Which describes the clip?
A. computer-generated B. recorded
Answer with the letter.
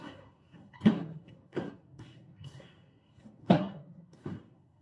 A